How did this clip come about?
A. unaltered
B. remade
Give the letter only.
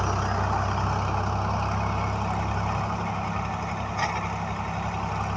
A